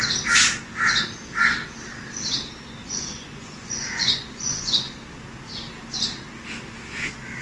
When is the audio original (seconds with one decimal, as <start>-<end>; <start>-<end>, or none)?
0.0-2.8; 4.7-7.4